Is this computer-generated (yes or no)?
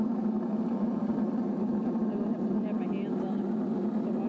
no